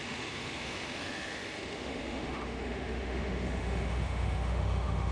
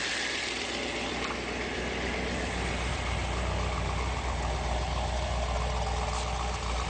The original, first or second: second